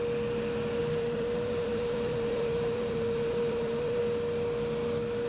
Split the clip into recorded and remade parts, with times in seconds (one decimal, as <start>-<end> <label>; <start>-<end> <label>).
0.0-0.8 recorded; 0.8-4.0 remade; 4.0-5.3 recorded